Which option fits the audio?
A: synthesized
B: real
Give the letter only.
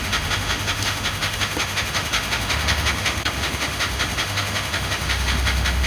A